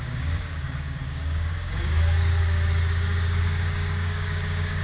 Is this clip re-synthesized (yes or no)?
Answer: yes